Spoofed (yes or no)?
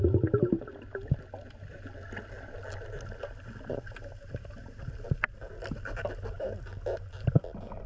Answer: no